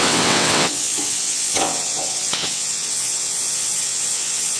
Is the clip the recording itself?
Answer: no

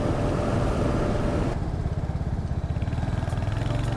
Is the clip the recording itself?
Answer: yes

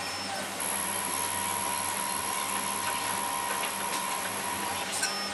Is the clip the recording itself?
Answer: yes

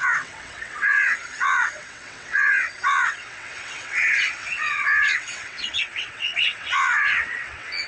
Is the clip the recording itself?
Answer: no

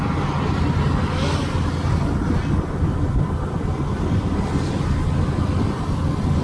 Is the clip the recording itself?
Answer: yes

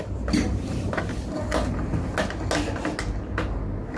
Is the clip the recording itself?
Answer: yes